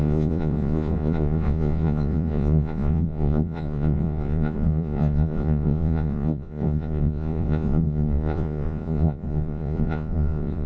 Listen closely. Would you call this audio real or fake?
fake